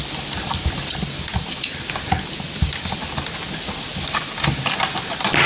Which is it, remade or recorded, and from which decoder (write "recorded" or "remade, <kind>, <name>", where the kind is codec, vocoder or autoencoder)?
recorded